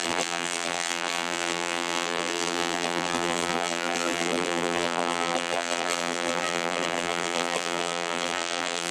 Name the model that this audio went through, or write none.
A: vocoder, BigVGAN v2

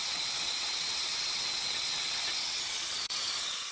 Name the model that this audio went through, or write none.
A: vocoder, WaveNeXt